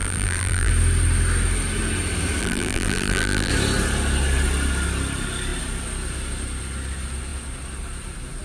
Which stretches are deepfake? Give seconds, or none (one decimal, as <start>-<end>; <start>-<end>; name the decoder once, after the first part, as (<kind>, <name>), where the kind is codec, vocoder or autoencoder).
0.0-0.7 (vocoder, BigVGAN v2); 2.4-3.5

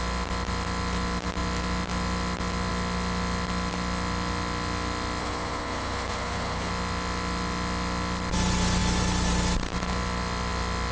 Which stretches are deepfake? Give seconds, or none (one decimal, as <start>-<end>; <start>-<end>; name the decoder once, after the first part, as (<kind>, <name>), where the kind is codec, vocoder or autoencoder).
5.2-6.7 (codec, HILCodec)

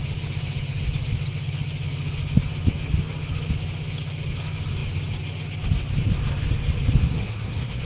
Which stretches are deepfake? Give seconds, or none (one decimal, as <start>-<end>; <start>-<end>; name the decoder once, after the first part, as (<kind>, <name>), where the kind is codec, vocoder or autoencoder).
7.0-7.8 (codec, SNAC)